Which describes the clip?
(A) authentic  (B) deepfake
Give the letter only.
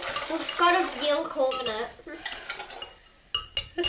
A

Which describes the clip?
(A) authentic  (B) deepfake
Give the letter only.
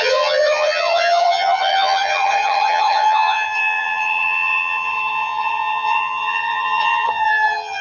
B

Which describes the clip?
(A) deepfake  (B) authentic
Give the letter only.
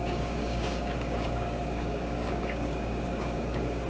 A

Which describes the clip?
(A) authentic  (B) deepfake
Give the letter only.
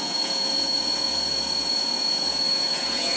B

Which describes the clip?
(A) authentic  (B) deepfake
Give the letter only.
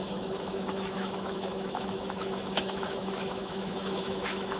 B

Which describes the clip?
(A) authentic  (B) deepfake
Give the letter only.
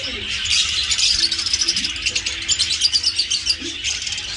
A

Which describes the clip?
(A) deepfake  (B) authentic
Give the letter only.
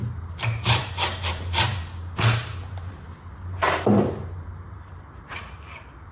A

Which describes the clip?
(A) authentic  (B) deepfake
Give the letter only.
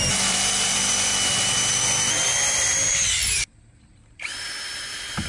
B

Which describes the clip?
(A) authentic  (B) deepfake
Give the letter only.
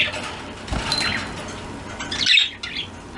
A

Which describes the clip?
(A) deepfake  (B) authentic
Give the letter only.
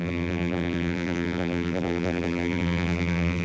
A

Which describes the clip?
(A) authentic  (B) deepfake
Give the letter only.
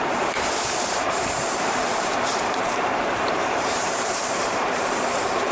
B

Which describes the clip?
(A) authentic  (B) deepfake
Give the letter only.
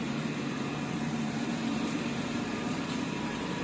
B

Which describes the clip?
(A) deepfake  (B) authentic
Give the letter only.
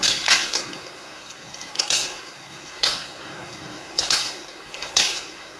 A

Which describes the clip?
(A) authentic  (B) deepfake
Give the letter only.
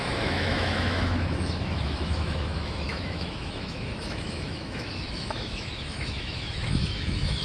B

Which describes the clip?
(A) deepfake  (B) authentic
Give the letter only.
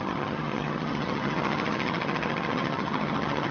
A